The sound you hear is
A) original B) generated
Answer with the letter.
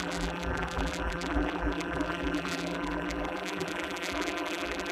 B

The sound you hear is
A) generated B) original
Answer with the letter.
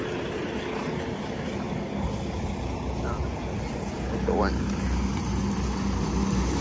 B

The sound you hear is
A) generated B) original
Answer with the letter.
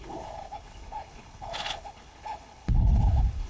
A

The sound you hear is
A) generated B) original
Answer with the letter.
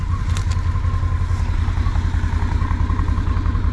B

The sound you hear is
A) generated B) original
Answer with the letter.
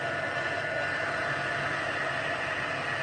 B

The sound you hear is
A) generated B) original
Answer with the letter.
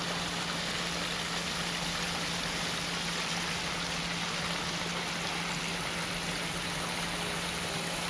B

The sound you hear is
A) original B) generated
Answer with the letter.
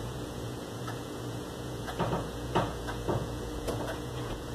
B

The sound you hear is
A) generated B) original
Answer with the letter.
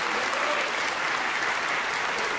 B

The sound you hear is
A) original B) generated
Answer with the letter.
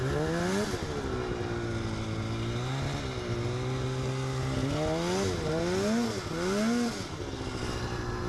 A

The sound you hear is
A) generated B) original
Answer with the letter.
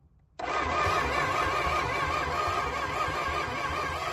B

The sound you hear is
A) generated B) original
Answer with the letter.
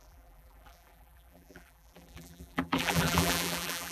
A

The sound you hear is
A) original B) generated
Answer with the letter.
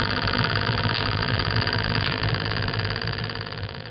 B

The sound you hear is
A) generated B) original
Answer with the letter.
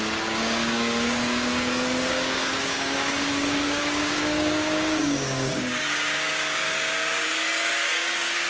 A